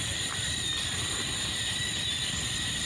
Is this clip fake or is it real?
fake